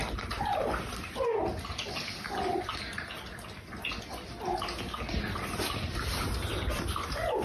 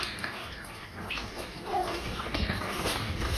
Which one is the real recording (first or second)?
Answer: first